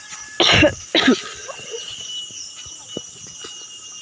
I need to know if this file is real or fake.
real